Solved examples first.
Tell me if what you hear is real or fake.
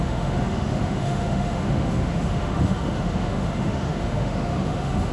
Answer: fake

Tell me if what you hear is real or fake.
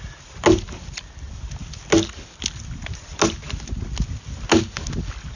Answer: real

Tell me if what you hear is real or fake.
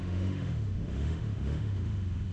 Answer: fake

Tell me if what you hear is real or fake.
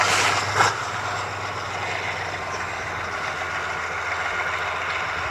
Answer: real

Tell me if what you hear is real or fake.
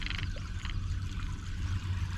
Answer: real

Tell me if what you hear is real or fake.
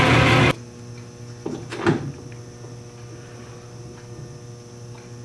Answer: real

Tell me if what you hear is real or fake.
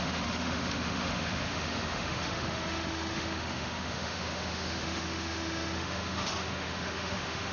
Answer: fake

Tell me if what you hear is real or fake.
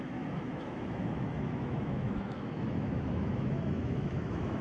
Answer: fake